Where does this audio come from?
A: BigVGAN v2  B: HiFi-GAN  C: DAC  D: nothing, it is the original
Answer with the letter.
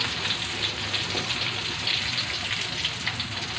D